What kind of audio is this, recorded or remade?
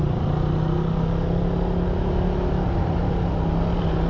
recorded